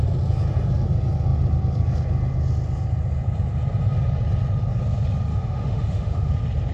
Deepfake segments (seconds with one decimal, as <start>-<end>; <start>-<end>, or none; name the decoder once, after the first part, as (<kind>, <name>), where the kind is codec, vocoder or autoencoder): 5.3-6.3 (autoencoder, DAC-VAE)